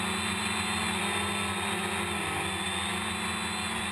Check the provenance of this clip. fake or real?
real